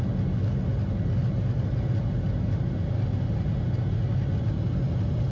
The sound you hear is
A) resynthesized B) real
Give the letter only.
B